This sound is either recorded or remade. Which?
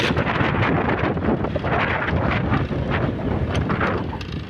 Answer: recorded